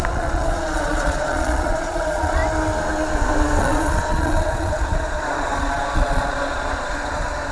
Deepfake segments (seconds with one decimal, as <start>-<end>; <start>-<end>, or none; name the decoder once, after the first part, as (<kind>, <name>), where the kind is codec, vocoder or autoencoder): 0.0-2.4 (vocoder, Vocos); 3.6-7.5